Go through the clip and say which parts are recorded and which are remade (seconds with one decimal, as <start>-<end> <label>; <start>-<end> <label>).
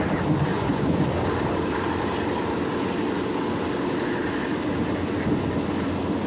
0.0-0.5 recorded; 0.5-1.1 remade; 1.1-6.3 recorded